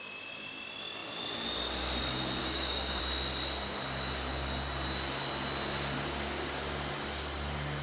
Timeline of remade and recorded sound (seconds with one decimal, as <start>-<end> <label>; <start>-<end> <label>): 0.0-2.4 recorded; 2.4-3.0 remade; 3.0-7.8 recorded